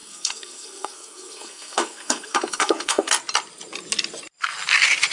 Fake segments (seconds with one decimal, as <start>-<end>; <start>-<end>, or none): 0.0-3.1